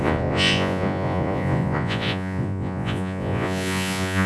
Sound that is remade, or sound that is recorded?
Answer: remade